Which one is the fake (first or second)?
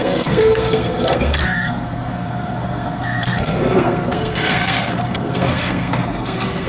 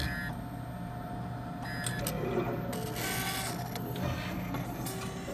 first